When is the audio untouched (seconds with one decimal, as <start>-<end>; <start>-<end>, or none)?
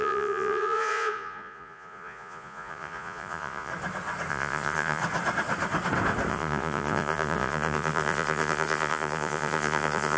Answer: 3.7-4.3; 5.0-6.3